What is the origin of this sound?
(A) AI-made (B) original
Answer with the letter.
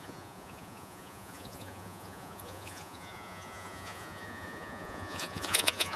A